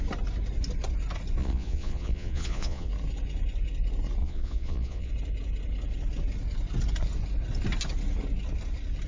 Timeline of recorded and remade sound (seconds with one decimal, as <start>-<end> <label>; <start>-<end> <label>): 0.0-1.4 recorded; 1.4-2.9 remade; 2.9-4.2 recorded; 4.2-5.1 remade; 5.1-9.1 recorded